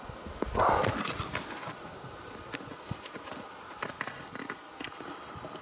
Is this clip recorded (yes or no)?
yes